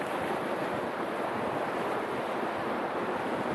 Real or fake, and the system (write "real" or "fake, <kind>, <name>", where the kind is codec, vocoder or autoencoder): real